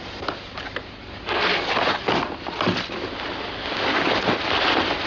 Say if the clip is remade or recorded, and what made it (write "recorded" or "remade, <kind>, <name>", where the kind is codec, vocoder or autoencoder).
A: recorded